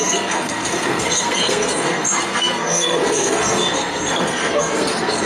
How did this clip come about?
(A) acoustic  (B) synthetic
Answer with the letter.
B